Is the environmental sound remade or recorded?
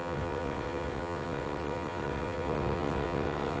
remade